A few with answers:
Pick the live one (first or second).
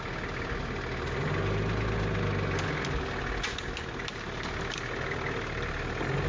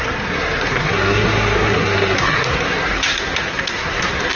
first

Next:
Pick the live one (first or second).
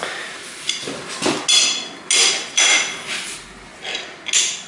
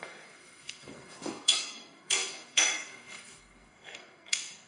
first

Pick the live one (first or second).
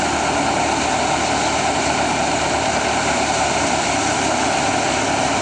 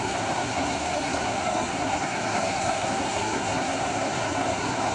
first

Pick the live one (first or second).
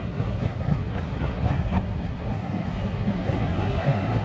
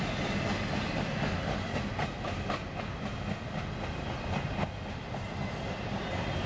second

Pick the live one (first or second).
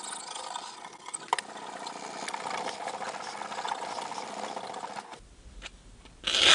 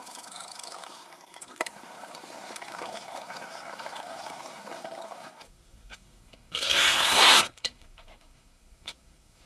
first